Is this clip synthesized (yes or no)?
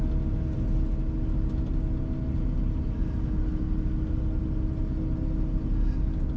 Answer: no